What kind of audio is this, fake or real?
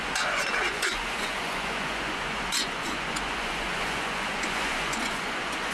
fake